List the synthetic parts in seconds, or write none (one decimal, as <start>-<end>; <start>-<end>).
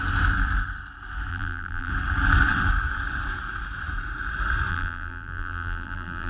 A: 1.3-1.9; 4.7-6.3